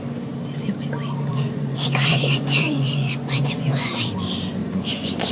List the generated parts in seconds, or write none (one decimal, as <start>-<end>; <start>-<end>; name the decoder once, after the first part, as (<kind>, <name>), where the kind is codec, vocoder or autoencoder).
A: 1.3-3.9 (vocoder, Vocos); 4.6-5.3